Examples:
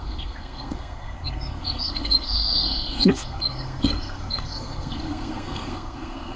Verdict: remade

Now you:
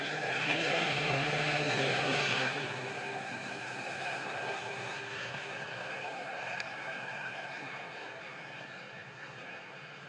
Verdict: remade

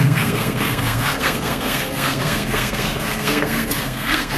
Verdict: remade